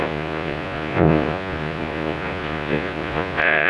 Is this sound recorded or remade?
remade